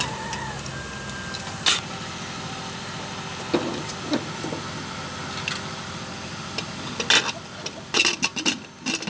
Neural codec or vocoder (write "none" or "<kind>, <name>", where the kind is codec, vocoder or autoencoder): none